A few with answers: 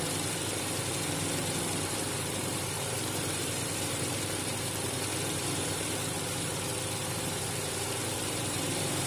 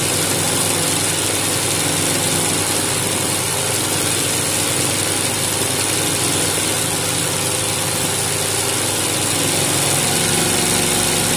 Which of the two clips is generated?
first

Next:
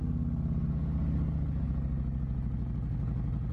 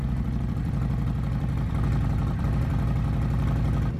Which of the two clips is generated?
second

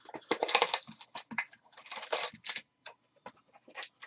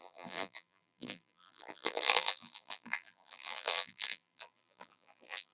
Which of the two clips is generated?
second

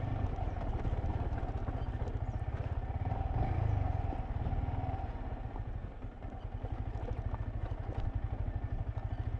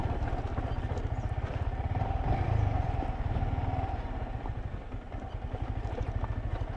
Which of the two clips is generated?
second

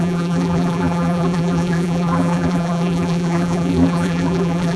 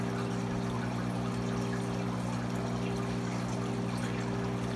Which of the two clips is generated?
first